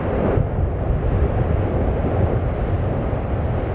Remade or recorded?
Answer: recorded